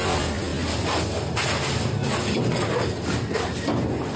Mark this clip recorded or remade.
recorded